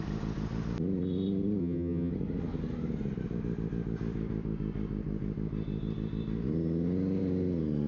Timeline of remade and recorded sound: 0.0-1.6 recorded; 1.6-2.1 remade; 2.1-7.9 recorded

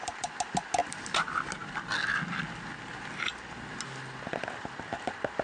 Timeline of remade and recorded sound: 0.0-5.4 recorded

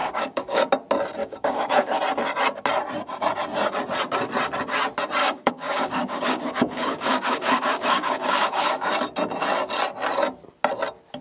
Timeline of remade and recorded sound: 0.0-0.7 remade; 0.7-1.2 recorded; 1.2-2.0 remade; 2.0-5.2 recorded; 5.2-8.9 remade; 8.9-11.2 recorded

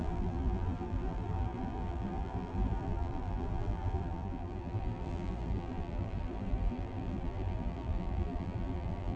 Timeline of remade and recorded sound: 0.0-9.2 remade

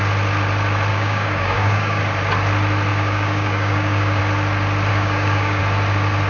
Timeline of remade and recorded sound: 0.0-0.9 recorded; 0.9-2.0 remade; 2.0-2.9 recorded; 2.9-4.2 remade; 4.2-4.9 recorded; 4.9-5.6 remade; 5.6-6.3 recorded

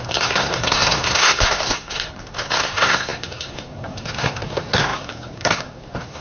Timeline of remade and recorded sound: 0.0-6.2 remade

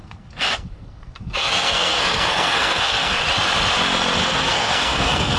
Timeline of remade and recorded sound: 0.0-3.2 remade; 3.2-4.2 recorded; 4.2-5.4 remade

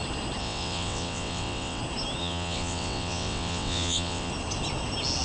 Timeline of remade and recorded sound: 0.0-0.4 recorded; 0.4-1.8 remade; 1.8-2.2 recorded; 2.2-4.3 remade; 4.3-5.2 recorded